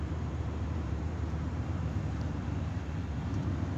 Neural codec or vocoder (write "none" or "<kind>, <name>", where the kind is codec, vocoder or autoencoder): vocoder, BigVGAN v2